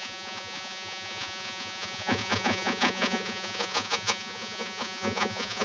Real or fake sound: fake